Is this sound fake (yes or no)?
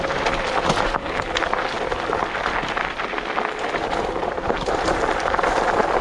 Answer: no